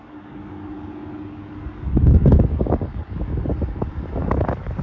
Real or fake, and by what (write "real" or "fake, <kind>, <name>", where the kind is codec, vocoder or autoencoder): fake, codec, DAC